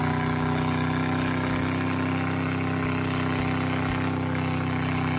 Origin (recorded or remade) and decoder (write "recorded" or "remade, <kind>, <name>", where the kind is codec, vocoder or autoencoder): recorded